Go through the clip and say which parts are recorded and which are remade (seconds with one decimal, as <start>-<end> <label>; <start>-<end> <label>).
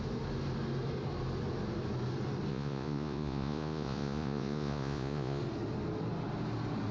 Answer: 0.0-2.5 recorded; 2.5-5.4 remade; 5.4-6.9 recorded